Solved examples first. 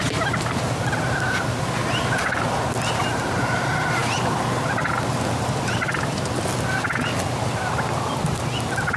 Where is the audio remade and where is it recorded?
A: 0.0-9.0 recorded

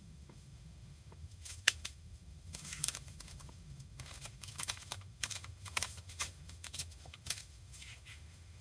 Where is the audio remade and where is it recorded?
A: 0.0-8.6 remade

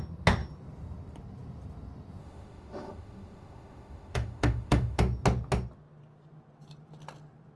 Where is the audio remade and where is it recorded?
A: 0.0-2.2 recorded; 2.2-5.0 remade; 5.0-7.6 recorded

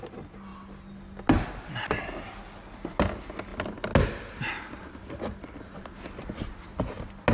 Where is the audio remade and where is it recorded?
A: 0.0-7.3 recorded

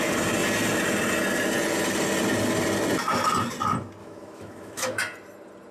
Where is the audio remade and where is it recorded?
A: 0.0-4.0 recorded; 4.0-5.0 remade; 5.0-5.7 recorded